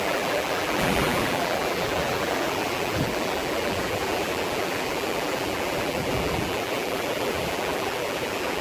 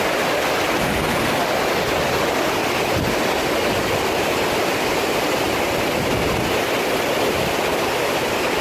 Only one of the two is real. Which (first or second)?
second